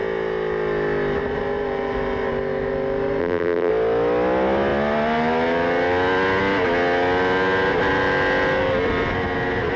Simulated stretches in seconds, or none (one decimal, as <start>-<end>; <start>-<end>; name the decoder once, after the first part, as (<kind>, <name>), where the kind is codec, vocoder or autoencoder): 3.2-3.7 (vocoder, BigVGAN v2)